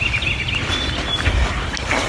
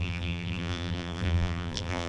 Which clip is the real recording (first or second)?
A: first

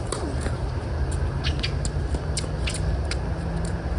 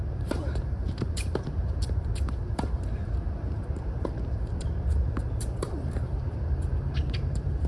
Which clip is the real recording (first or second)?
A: first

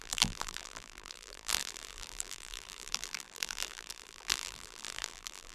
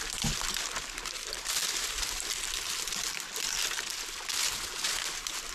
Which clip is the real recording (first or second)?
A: second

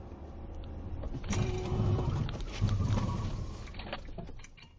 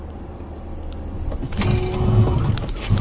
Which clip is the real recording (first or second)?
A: second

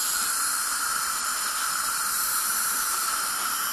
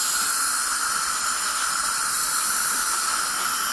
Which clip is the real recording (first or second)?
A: second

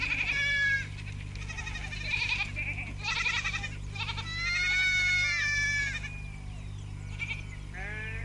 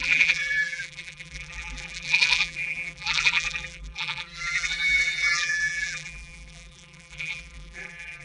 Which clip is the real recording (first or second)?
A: first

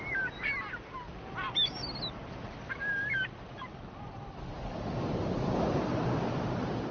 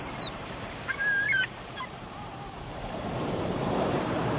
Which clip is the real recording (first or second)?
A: first